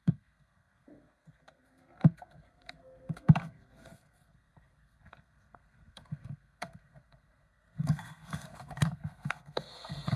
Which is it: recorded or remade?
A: remade